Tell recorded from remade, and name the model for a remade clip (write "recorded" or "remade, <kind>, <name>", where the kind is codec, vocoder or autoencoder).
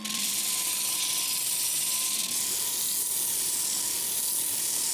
recorded